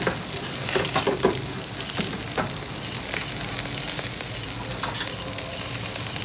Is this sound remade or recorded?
recorded